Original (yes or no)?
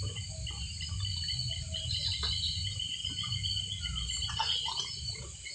yes